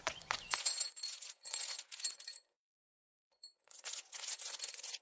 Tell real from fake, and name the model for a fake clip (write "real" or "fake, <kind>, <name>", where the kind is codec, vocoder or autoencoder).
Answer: fake, vocoder, Vocos